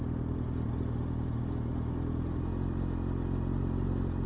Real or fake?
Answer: real